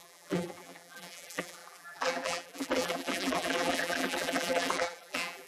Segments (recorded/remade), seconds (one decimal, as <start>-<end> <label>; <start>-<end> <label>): 0.0-5.5 remade